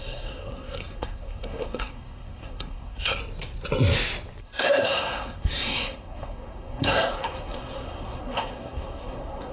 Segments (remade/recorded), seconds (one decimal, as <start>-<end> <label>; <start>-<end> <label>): 0.0-3.2 remade; 3.2-4.4 recorded; 4.4-9.5 remade